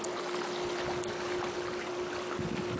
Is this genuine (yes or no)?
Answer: yes